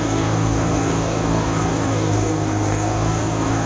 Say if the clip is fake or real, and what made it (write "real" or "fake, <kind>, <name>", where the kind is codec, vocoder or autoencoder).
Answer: fake, codec, DAC